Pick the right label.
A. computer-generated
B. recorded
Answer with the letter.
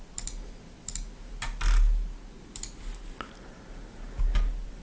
B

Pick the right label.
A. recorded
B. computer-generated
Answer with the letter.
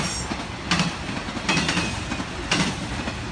A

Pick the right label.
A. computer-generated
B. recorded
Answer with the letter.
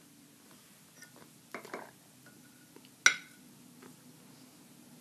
B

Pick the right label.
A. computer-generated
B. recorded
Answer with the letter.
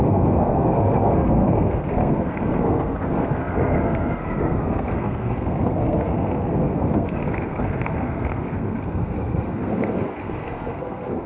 A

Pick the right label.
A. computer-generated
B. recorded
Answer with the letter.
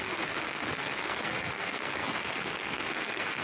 A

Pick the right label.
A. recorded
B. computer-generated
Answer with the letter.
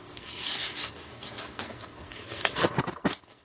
B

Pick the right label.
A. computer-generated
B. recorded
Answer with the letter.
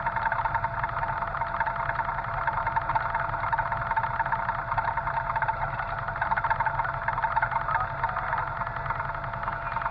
B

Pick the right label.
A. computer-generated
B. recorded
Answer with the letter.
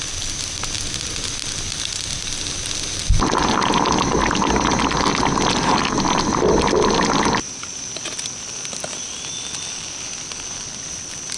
B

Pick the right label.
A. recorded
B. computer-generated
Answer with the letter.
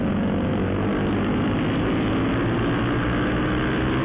A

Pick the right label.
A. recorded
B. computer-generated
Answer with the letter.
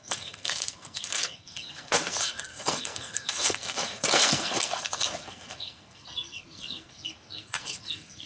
B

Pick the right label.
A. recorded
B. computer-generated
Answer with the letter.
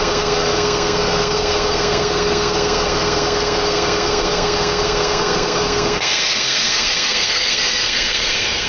B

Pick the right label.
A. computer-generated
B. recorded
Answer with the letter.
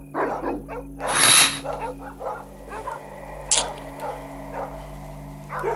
B